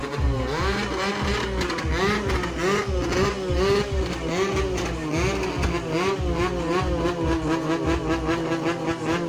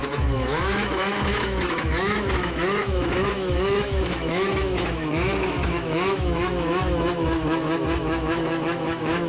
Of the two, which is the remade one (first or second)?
second